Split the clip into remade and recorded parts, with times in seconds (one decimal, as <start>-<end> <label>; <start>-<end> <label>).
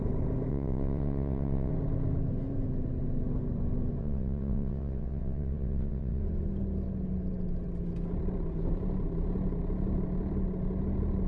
0.0-0.5 recorded; 0.5-1.7 remade; 1.7-4.0 recorded; 4.0-6.2 remade; 6.2-11.3 recorded